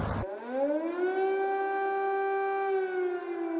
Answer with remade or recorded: recorded